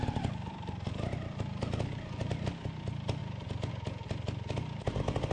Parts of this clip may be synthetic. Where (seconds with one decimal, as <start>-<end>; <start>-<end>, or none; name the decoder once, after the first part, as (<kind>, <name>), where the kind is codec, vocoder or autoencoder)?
none